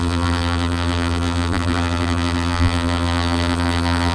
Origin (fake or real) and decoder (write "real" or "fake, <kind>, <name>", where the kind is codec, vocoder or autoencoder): fake, vocoder, BigVGAN v2